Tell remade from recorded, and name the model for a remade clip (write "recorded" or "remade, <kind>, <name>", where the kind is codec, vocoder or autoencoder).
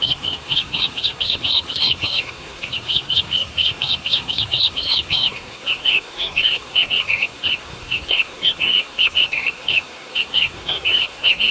remade, codec, SNAC